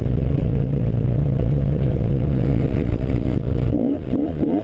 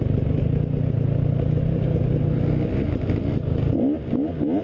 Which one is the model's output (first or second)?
first